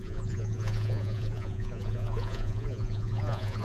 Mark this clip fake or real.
fake